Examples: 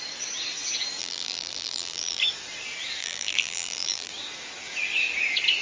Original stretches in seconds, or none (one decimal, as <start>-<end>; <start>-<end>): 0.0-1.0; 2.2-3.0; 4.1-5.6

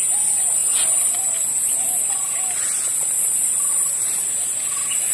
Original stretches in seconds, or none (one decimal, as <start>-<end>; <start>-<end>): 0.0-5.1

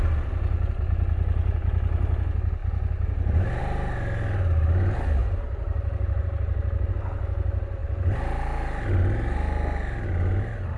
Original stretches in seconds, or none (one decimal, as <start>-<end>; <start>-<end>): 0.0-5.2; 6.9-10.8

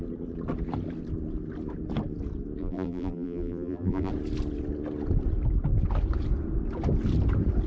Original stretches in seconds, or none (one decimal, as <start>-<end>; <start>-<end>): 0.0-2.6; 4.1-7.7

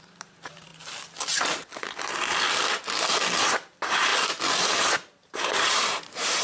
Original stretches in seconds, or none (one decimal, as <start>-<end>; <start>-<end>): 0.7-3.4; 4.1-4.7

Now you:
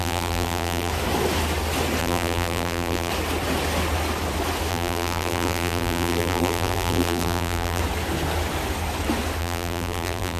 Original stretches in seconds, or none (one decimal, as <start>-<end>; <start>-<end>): 0.9-2.0; 3.1-4.7; 7.8-9.4